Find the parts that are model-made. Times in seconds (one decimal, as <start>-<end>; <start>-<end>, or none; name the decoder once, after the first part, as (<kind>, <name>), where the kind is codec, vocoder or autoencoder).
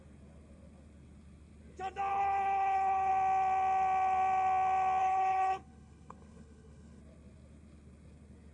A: 2.1-3.1 (codec, HILCodec); 5.0-7.0